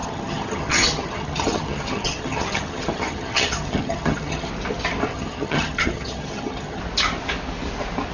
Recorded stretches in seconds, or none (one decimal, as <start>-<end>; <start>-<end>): 4.5-5.1; 6.8-8.1